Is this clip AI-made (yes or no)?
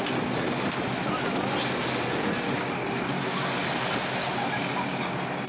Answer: no